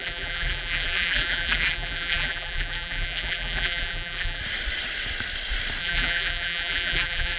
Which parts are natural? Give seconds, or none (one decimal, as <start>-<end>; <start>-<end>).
4.4-5.8